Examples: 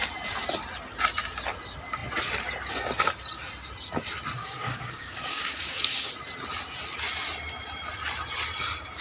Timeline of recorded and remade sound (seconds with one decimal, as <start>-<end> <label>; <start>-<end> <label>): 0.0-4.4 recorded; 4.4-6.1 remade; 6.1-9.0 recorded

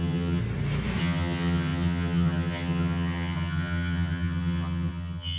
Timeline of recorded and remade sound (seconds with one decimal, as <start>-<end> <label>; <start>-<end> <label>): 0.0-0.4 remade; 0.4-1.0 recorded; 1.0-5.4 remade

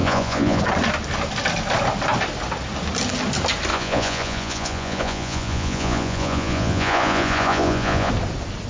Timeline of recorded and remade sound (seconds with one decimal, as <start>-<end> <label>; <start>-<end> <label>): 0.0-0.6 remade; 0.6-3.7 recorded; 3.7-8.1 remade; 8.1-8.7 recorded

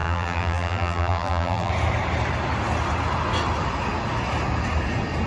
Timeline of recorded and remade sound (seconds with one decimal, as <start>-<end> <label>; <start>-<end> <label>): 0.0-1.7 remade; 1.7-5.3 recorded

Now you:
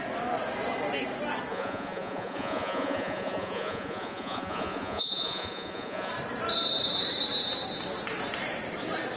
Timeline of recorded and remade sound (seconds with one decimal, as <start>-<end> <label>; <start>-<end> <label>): 0.0-1.5 recorded; 1.5-6.1 remade; 6.1-9.2 recorded

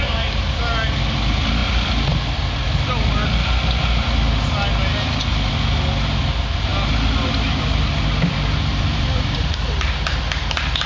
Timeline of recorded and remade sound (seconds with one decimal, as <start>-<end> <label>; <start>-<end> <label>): 0.0-8.7 recorded; 8.7-10.2 remade; 10.2-10.9 recorded